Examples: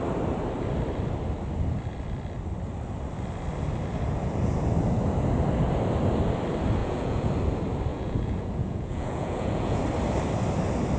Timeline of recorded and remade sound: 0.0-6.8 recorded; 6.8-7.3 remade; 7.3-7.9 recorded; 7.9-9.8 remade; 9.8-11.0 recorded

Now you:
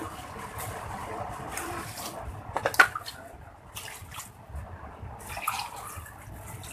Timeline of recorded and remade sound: 0.0-1.0 recorded; 1.0-2.0 remade; 2.0-4.0 recorded; 4.0-4.7 remade; 4.7-6.7 recorded